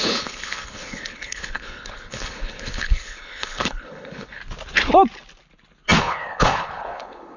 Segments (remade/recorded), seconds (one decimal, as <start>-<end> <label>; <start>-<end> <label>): 0.0-4.4 remade; 4.4-6.0 recorded; 6.0-7.4 remade